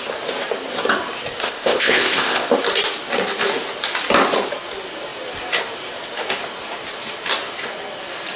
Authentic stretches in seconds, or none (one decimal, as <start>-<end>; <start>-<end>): 0.0-1.4; 2.5-8.4